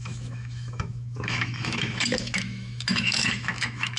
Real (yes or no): no